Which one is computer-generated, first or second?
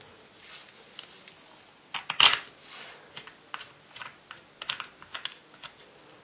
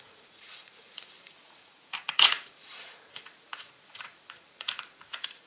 second